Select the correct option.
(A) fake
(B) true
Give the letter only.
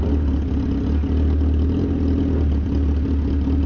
B